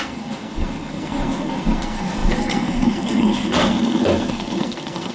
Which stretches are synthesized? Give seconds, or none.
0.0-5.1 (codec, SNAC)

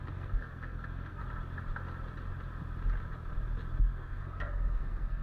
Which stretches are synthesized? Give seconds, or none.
0.0-1.2 (codec, SNAC); 3.8-5.2

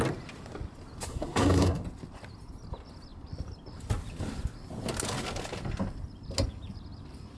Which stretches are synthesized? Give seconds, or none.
1.1-1.8 (codec, SNAC)

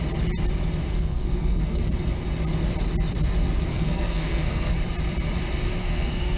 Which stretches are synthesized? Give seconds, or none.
0.9-1.9 (codec, SNAC); 3.7-4.7; 5.8-6.4

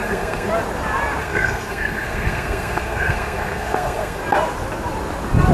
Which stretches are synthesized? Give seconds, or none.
0.0-0.5 (codec, SNAC); 1.2-4.2

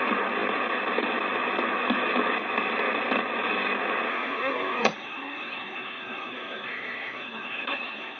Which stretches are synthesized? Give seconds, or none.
4.1-8.2 (codec, SNAC)

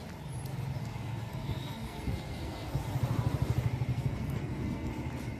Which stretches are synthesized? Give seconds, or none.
0.8-2.8 (codec, SNAC); 3.9-4.9

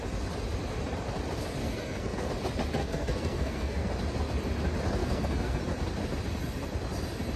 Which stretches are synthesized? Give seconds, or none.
1.6-2.3 (codec, SNAC); 2.8-3.9; 5.0-5.6